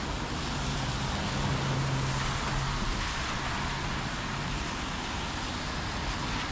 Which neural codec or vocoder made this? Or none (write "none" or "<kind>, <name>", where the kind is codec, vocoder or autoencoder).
none